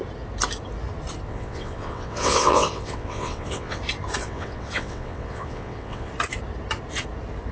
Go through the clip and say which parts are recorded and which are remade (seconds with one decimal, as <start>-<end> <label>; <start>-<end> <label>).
0.0-1.3 recorded; 1.3-3.8 remade; 3.8-4.2 recorded; 4.2-6.1 remade; 6.1-7.5 recorded